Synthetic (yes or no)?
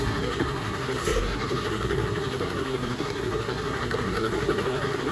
yes